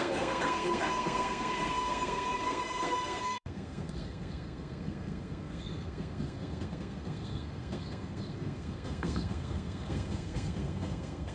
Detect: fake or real fake